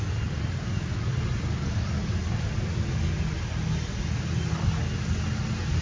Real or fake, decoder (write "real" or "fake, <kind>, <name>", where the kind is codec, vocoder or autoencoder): real